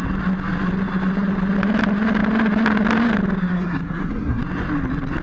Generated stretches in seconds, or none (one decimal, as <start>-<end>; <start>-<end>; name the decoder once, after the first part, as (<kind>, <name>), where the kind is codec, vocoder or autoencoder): 3.5-4.4 (codec, SNAC)